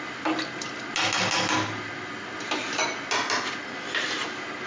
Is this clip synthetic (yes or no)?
no